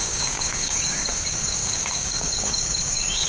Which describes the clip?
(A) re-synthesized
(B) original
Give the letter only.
A